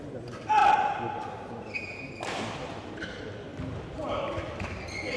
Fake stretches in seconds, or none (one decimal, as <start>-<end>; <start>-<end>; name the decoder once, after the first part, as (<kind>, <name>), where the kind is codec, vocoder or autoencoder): 0.0-3.5 (vocoder, BigVGAN v2); 4.7-5.2